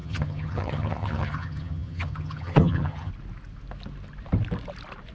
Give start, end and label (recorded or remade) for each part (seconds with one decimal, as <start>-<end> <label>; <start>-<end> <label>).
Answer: 0.0-3.1 remade; 3.1-5.1 recorded